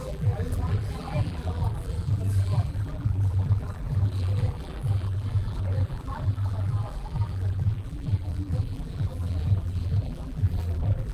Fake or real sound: fake